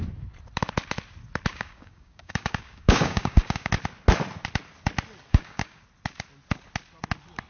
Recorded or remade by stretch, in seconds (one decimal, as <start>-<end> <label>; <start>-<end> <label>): 0.0-1.5 recorded; 1.5-3.7 remade; 3.7-5.3 recorded; 5.3-5.8 remade; 5.8-7.5 recorded